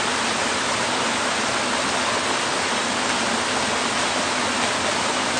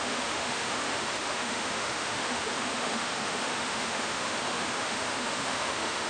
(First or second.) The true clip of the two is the first